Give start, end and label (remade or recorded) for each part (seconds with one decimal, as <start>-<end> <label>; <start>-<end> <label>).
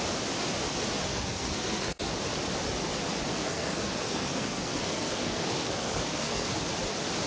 0.0-1.1 recorded; 1.1-2.1 remade; 2.1-3.3 recorded; 3.3-6.6 remade; 6.6-7.3 recorded